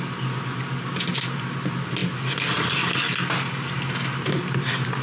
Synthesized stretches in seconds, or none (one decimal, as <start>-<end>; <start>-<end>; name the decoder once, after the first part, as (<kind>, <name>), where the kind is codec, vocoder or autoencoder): none